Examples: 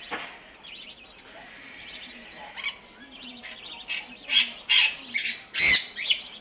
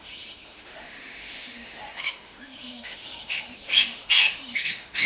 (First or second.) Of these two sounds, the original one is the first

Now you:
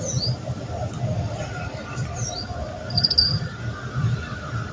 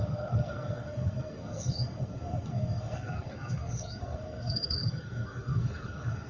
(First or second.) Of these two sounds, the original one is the first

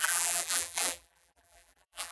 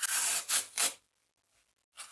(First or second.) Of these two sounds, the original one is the second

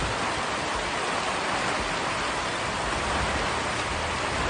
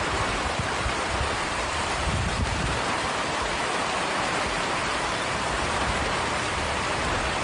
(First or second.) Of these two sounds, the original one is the first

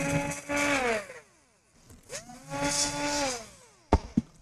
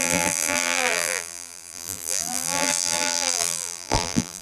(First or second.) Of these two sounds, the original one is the first